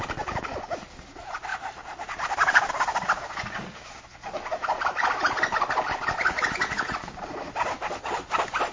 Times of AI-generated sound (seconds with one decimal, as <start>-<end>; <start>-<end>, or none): 1.5-2.7